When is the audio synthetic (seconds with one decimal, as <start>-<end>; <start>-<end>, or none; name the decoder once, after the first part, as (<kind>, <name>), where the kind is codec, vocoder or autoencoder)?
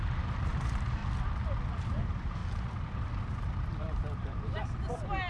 0.0-1.0 (vocoder, BigVGAN v2); 1.7-2.4; 3.8-5.3